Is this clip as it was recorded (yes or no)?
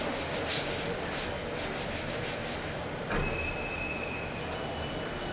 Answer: yes